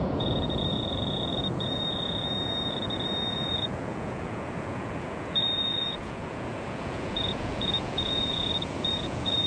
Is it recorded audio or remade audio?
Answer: remade